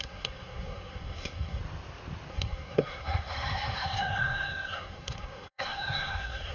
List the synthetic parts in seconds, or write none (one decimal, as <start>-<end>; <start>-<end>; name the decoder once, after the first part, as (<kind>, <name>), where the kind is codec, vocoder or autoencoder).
0.0-1.6 (codec, SNAC); 2.3-6.5